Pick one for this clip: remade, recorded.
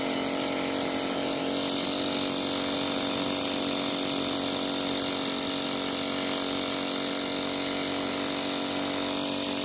recorded